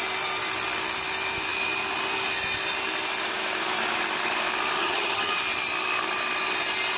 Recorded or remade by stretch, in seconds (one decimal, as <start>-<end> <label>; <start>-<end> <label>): 0.0-4.8 recorded; 4.8-5.4 remade; 5.4-7.0 recorded